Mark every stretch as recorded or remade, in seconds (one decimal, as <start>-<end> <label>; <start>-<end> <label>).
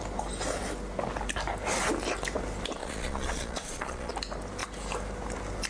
0.0-2.8 recorded; 2.8-4.1 remade; 4.1-5.7 recorded